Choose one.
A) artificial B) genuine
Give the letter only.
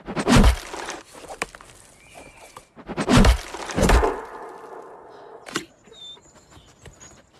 B